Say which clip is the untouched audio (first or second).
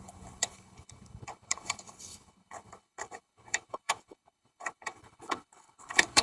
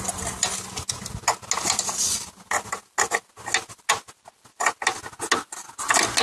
second